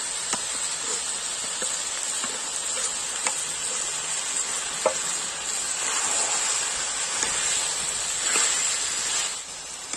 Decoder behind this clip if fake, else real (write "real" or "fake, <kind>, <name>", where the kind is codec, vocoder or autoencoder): real